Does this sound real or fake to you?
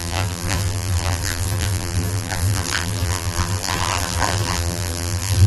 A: fake